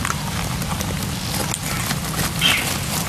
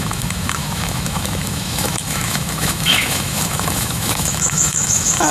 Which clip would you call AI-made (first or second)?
second